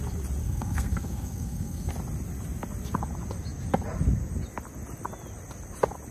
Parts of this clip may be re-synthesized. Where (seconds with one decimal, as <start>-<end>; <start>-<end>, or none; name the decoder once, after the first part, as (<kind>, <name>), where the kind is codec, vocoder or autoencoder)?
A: 0.4-1.9 (codec, SNAC)